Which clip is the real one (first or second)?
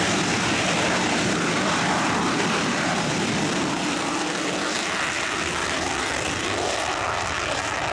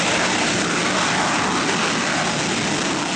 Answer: second